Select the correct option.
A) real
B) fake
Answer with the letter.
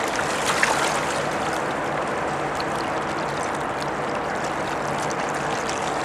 A